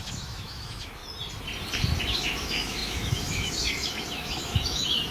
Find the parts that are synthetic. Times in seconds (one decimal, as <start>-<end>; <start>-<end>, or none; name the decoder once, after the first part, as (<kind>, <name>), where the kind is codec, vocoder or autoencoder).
0.0-1.0 (autoencoder, DAC-VAE); 2.0-5.1